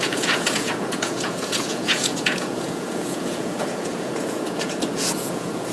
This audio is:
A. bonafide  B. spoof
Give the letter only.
B